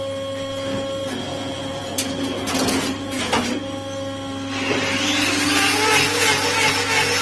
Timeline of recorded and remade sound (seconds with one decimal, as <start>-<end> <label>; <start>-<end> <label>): 0.0-1.3 recorded; 1.3-3.4 remade; 3.4-7.2 recorded